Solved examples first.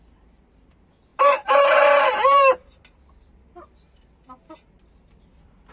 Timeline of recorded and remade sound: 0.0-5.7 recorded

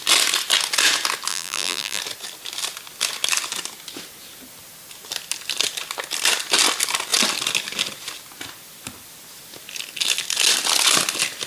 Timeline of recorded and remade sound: 0.0-1.3 recorded; 1.3-2.0 remade; 2.0-11.5 recorded